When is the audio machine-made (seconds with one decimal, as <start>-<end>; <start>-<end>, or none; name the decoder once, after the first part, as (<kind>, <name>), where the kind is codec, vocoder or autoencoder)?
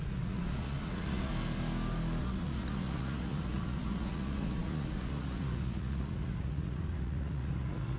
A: 0.0-1.3 (vocoder, Vocos); 2.2-8.0